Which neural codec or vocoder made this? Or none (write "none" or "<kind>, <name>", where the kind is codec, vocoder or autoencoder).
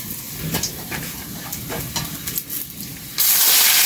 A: none